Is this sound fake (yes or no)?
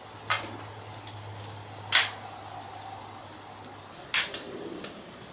no